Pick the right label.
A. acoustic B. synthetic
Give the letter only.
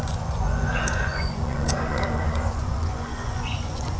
B